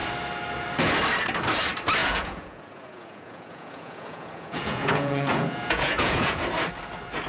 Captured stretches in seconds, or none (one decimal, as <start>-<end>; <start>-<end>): 0.0-2.0; 6.4-7.3